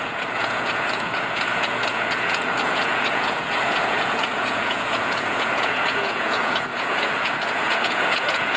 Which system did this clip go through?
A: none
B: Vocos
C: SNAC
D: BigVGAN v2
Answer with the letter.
B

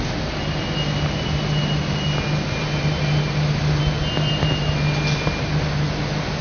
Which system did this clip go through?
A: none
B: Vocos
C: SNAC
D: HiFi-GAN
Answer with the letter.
A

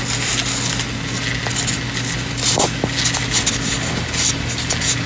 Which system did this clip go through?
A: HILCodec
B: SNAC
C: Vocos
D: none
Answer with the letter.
D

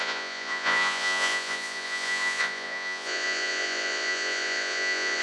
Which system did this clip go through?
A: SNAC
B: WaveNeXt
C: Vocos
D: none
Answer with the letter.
C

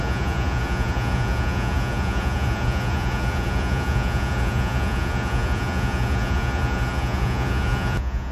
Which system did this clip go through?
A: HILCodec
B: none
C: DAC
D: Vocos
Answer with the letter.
D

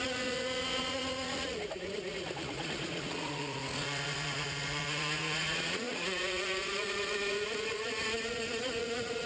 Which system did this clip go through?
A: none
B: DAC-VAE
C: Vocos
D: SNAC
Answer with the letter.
C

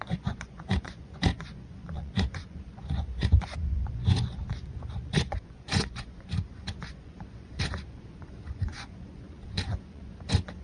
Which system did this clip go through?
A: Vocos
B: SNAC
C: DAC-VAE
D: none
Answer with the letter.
A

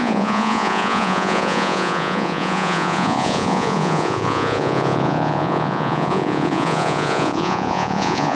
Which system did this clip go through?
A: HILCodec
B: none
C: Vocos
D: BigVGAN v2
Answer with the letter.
C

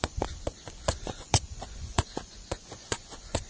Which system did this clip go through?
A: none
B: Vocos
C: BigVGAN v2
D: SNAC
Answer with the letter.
B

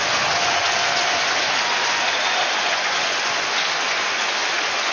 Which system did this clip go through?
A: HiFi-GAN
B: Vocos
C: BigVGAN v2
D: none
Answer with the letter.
B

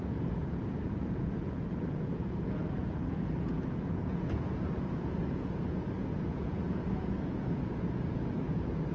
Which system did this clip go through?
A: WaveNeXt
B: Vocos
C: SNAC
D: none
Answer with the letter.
B